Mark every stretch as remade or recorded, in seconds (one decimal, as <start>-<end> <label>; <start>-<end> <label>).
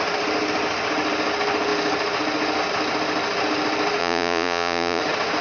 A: 0.0-4.0 recorded; 4.0-5.0 remade; 5.0-5.4 recorded